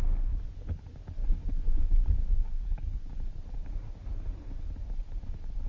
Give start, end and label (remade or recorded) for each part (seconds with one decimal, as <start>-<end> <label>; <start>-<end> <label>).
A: 0.0-2.2 recorded; 2.2-3.1 remade; 3.1-5.7 recorded